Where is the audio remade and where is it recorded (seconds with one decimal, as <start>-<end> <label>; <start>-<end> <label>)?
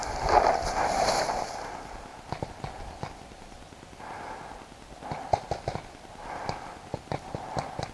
0.0-7.9 recorded